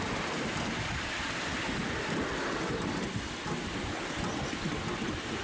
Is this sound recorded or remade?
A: recorded